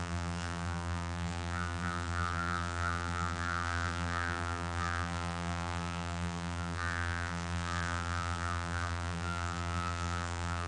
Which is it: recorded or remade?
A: remade